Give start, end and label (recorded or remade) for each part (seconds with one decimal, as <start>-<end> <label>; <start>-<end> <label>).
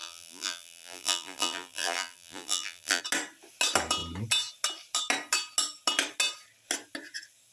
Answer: 0.0-3.0 remade; 3.0-7.5 recorded